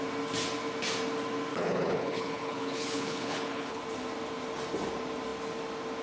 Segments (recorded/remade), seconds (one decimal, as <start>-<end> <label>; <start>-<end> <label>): 0.0-1.5 recorded; 1.5-3.8 remade; 3.8-6.0 recorded